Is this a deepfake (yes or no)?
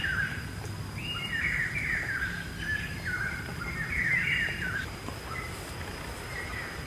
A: yes